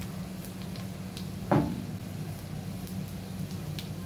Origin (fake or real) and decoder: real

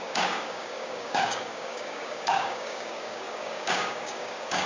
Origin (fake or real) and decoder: fake, codec, DAC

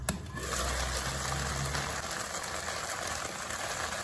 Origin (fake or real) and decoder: real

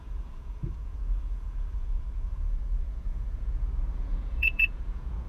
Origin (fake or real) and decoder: fake, vocoder, Vocos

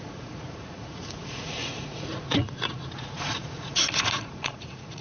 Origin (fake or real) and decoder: fake, vocoder, Vocos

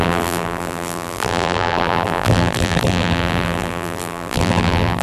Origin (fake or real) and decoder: fake, vocoder, BigVGAN v2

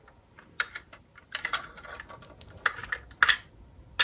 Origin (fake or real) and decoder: real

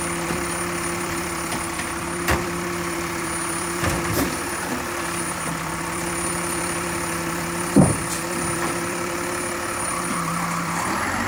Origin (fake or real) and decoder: fake, vocoder, BigVGAN v2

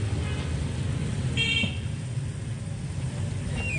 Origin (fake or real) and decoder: real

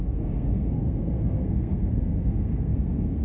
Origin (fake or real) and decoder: fake, codec, SNAC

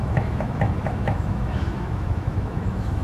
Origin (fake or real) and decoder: fake, autoencoder, DAC-VAE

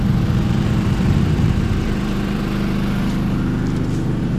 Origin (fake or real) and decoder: fake, vocoder, BigVGAN v2